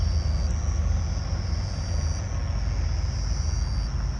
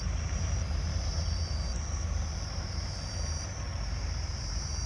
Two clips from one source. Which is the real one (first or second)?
first